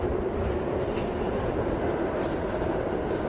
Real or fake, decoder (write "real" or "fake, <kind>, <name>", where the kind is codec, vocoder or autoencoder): fake, vocoder, BigVGAN v2